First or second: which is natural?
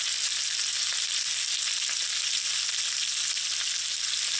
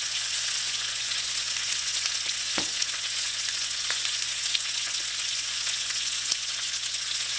first